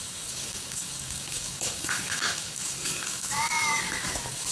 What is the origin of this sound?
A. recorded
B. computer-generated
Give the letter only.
B